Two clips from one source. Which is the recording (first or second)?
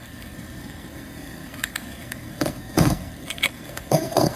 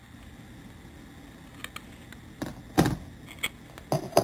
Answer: second